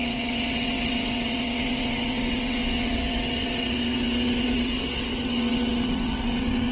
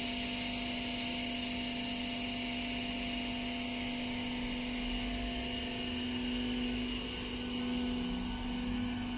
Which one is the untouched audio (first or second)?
second